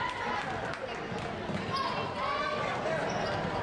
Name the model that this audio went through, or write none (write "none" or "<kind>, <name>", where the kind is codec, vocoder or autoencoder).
none